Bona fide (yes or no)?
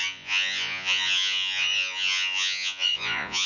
no